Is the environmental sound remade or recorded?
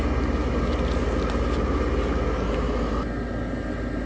recorded